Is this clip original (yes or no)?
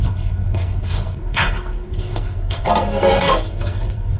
no